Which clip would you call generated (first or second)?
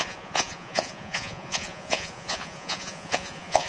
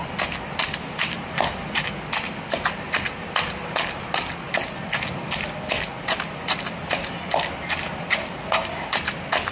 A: first